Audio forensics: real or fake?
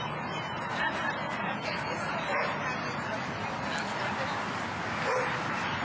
real